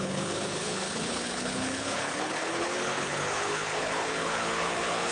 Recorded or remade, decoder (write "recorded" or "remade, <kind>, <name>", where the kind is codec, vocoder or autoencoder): remade, codec, HILCodec